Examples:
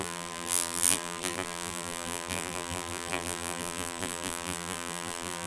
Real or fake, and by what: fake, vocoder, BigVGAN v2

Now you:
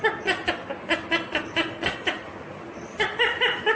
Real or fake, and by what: real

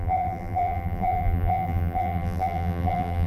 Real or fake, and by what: fake, vocoder, BigVGAN v2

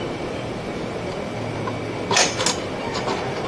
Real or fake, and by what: real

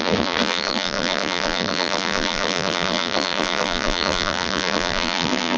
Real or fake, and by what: fake, vocoder, BigVGAN v2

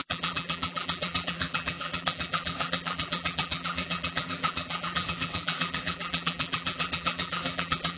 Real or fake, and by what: fake, vocoder, BigVGAN v2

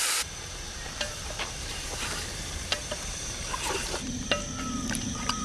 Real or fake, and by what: fake, vocoder, BigVGAN v2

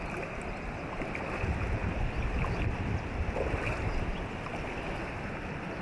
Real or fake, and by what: real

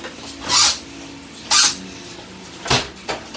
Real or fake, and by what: real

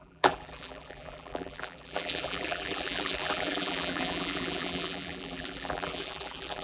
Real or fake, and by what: fake, vocoder, BigVGAN v2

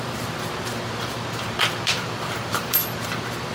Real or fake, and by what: fake, vocoder, BigVGAN v2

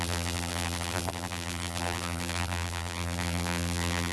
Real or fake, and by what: fake, vocoder, BigVGAN v2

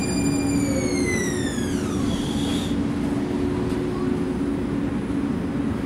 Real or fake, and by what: real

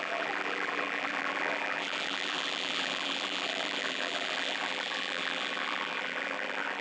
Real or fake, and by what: fake, vocoder, BigVGAN v2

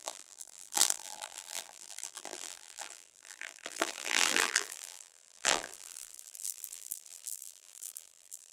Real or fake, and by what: fake, vocoder, BigVGAN v2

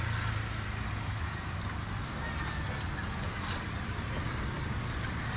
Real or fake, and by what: real